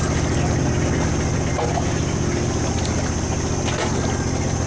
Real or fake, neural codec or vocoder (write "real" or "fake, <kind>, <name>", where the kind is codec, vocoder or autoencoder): real